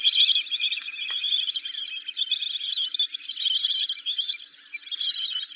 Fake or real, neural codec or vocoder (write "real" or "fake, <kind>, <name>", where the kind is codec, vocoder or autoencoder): real